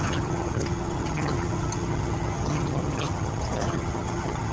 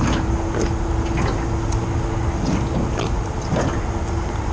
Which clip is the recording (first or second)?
second